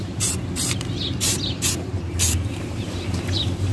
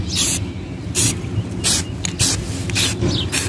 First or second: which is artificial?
first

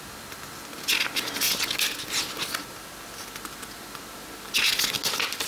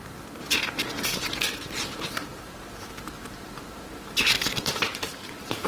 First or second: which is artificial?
second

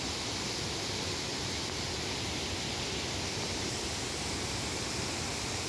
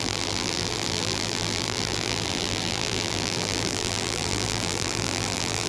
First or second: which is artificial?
second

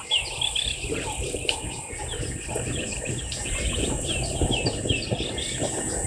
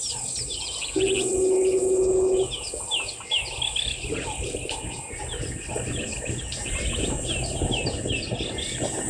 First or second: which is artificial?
first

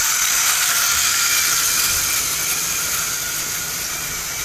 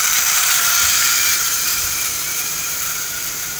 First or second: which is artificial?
second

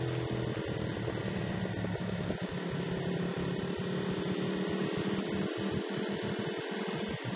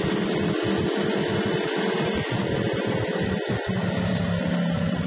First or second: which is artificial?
second